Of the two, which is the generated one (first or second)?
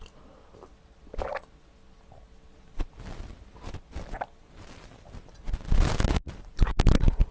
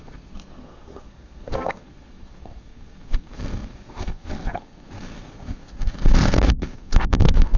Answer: second